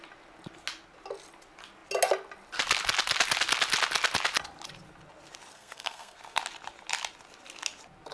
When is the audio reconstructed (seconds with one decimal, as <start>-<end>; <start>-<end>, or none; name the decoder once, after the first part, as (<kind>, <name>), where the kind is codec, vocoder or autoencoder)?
5.5-6.4 (codec, SNAC)